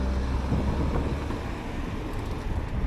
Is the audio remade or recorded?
recorded